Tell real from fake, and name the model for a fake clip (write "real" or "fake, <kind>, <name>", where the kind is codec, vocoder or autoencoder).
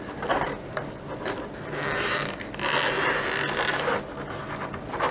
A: real